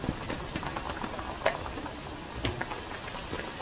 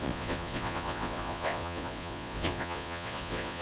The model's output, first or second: second